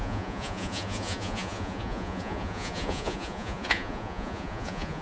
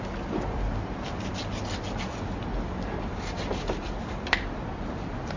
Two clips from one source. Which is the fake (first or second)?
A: first